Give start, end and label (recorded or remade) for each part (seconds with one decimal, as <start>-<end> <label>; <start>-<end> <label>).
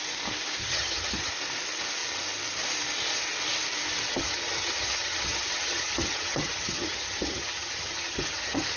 0.0-0.6 recorded; 0.6-1.3 remade; 1.3-4.1 recorded; 4.1-8.8 remade